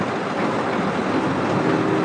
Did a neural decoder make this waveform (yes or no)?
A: no